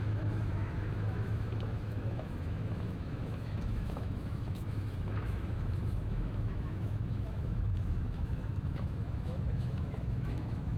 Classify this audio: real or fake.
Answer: fake